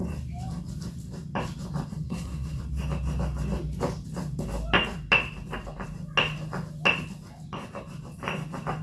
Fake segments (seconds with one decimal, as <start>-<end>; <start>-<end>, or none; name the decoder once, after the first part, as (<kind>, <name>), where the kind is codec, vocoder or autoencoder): 1.9-2.6 (codec, SNAC)